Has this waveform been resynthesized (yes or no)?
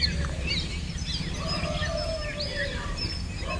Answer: no